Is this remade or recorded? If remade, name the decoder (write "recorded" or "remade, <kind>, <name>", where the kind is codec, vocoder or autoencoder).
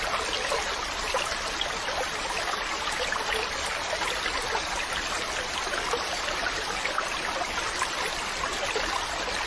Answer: recorded